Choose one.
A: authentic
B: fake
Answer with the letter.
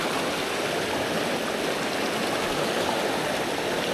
A